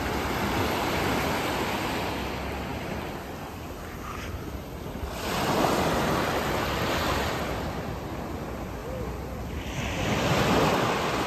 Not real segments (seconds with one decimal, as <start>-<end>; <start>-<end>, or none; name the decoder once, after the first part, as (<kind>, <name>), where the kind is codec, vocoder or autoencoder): none